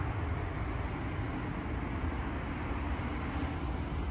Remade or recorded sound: recorded